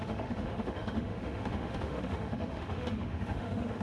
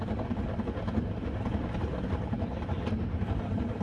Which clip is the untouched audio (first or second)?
second